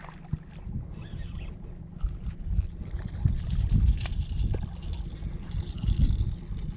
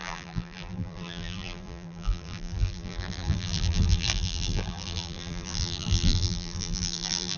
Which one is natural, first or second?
first